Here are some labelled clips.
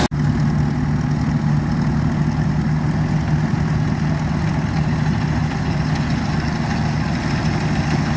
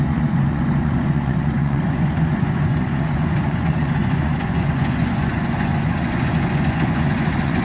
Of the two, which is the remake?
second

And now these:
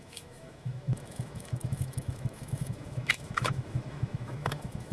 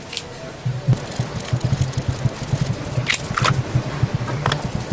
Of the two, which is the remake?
first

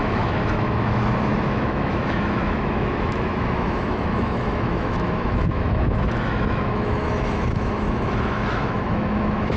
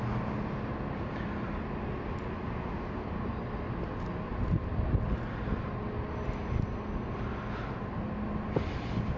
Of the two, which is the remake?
first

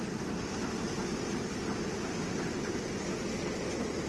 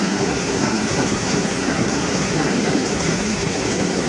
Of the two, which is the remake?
second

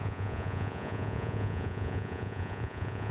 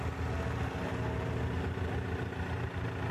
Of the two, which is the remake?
first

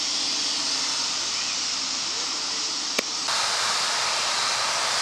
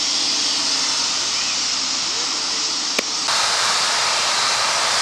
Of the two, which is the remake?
first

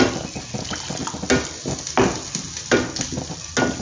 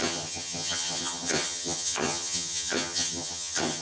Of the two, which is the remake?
second